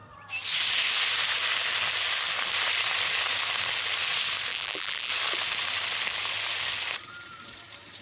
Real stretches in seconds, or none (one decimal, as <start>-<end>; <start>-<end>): 0.0-4.5; 5.1-8.0